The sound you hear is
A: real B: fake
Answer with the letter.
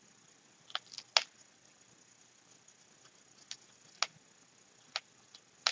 A